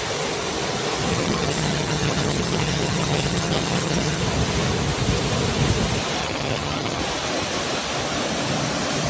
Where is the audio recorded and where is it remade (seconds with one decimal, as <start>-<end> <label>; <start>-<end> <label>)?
0.0-1.1 recorded; 1.1-4.2 remade; 4.2-6.2 recorded; 6.2-7.0 remade; 7.0-9.1 recorded